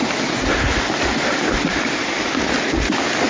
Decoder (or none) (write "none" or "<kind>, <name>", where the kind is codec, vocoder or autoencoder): none